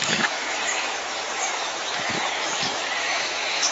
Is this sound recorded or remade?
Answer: remade